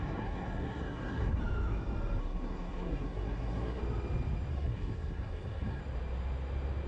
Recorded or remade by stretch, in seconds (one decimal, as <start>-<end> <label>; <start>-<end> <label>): 0.0-1.4 remade; 1.4-2.2 recorded; 2.2-3.8 remade; 3.8-4.5 recorded; 4.5-5.8 remade; 5.8-6.9 recorded